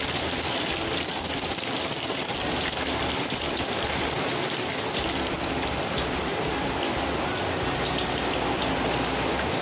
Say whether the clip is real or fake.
fake